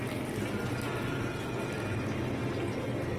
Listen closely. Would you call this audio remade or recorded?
recorded